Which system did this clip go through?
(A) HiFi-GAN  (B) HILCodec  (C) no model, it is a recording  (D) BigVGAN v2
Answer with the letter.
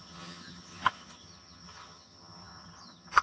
A